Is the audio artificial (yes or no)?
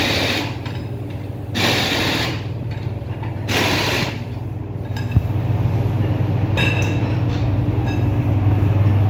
no